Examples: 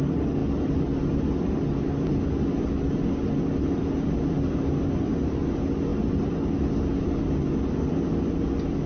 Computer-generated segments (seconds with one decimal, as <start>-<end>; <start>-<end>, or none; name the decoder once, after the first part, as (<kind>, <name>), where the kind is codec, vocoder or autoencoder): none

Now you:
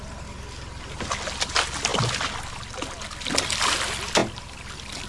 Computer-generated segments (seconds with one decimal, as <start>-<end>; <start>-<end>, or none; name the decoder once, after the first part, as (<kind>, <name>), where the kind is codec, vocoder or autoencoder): none

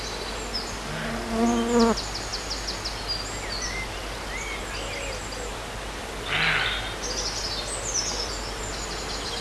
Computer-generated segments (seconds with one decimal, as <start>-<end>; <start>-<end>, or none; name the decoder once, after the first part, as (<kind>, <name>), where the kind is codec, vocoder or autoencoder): none

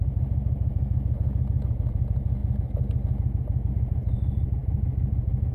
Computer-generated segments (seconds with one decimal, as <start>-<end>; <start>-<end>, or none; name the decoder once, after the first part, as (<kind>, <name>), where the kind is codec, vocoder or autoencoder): 0.0-2.4 (vocoder, Vocos); 3.7-5.5

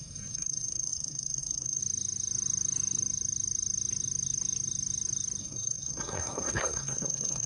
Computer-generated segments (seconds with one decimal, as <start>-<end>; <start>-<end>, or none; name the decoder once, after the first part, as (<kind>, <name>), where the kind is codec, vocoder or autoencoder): 0.0-1.8 (codec, SNAC); 5.4-7.5

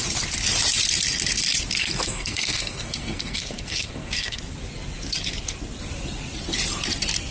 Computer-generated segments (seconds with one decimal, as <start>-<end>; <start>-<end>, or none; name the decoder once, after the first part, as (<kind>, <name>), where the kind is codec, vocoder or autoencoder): 1.8-4.4 (codec, SNAC)